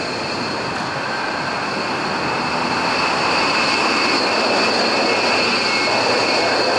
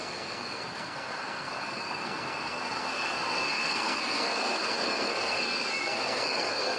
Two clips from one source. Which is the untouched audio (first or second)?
first